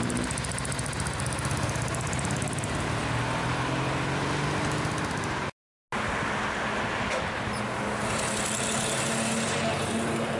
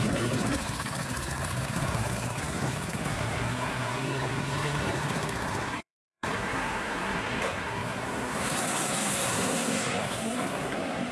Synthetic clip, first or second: second